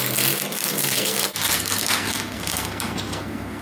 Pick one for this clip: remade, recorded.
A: remade